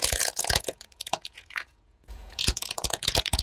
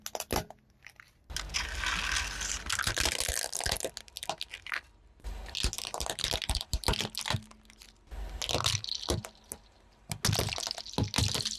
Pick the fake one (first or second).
first